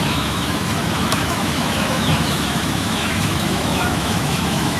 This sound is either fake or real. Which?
fake